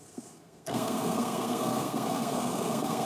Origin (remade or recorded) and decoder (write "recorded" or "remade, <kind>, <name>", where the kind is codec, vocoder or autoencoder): remade, codec, SNAC